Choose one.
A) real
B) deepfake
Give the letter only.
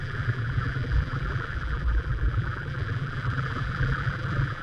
B